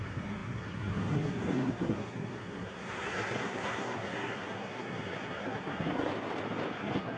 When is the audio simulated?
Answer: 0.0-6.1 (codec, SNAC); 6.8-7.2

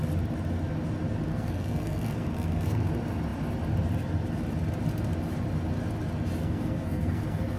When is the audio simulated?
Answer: 1.3-2.9 (codec, SNAC); 6.4-7.6